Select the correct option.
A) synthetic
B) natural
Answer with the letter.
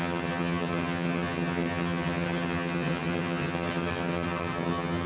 A